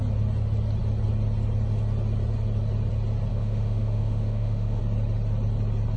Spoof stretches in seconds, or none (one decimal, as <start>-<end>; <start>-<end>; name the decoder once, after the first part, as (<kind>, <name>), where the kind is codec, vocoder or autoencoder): 3.3-4.8 (autoencoder, DAC-VAE)